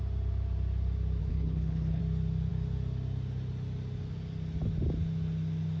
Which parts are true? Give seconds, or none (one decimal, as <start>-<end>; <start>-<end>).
0.0-1.2; 2.0-5.8